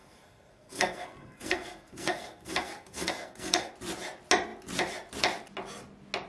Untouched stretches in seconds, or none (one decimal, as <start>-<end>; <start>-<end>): 3.7-6.3